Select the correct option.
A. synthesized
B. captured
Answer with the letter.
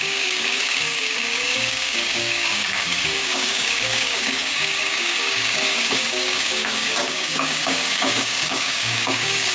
A